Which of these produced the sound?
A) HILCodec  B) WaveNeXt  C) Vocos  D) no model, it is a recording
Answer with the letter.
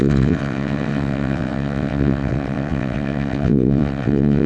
B